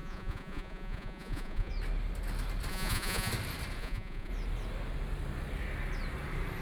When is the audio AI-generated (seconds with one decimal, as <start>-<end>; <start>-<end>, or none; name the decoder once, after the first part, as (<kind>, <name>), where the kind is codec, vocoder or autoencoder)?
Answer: 0.0-1.7 (vocoder, Vocos); 2.7-3.3; 3.8-4.3